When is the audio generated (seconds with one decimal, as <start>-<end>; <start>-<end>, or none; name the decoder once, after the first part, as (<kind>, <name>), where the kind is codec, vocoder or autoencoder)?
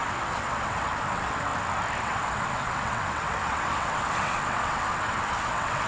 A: 0.0-1.5 (vocoder, WaveNeXt); 2.0-5.9